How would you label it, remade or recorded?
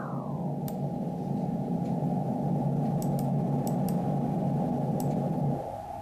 recorded